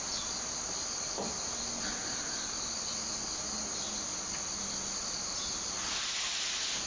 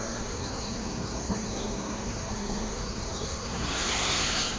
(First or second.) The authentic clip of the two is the first